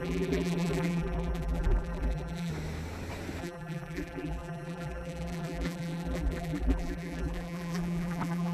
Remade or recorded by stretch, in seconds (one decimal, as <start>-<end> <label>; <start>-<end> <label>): 0.0-2.5 remade; 2.5-3.4 recorded; 3.4-8.5 remade